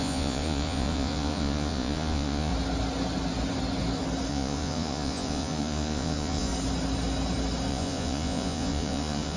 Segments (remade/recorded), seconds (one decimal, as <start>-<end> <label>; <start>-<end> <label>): 0.0-2.5 remade; 2.5-4.3 recorded; 4.3-6.5 remade; 6.5-7.7 recorded; 7.7-9.4 remade